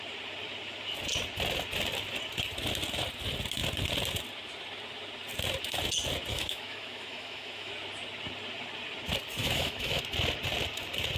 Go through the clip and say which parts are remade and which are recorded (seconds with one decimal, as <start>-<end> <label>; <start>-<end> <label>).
0.0-6.3 recorded; 6.3-7.7 remade; 7.7-9.4 recorded; 9.4-10.0 remade; 10.0-11.2 recorded